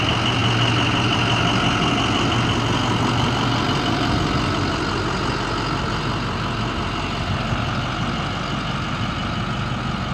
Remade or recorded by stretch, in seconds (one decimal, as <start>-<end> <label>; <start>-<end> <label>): 0.0-10.1 recorded